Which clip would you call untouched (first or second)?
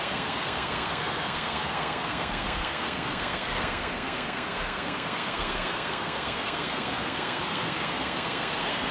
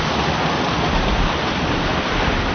second